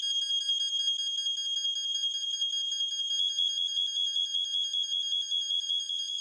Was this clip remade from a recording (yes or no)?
no